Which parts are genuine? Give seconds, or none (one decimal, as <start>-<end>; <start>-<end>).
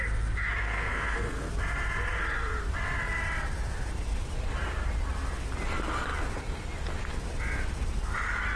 0.0-0.6; 1.5-8.6